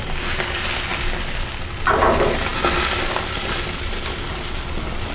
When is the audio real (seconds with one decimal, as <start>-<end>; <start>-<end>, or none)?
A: 0.0-5.1